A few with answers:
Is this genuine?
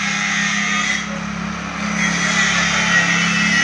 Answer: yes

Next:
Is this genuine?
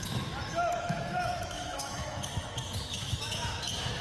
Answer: no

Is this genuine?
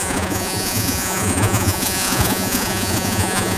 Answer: no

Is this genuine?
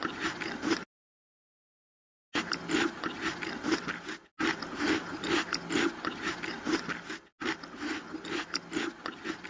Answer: yes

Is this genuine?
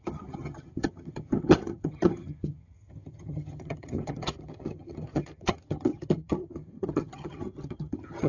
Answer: no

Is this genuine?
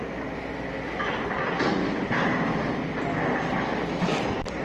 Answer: yes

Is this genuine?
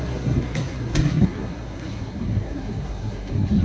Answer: no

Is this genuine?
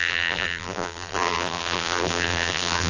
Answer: no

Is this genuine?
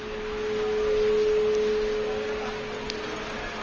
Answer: yes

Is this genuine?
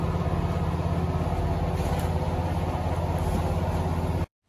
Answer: yes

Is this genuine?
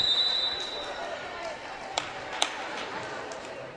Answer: no